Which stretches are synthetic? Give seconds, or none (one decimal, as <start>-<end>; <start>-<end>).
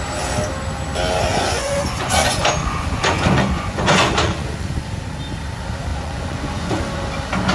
1.3-4.9; 5.9-6.8